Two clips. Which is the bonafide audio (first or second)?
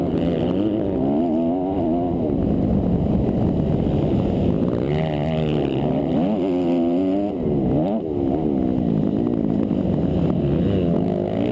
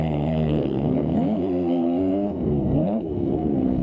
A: first